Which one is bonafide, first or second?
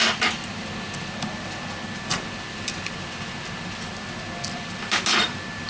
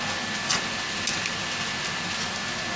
second